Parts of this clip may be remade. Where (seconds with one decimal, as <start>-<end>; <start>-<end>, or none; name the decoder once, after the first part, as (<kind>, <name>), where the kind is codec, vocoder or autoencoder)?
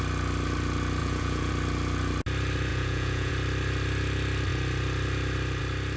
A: 1.0-1.5 (vocoder, Vocos); 2.7-3.3